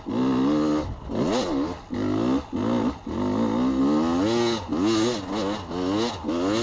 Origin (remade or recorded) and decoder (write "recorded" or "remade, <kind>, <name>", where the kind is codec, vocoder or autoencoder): recorded